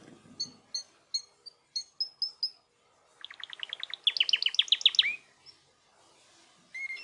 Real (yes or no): yes